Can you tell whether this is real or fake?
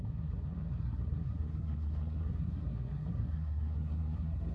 fake